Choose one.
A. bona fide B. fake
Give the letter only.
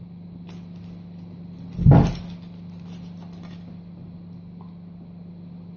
A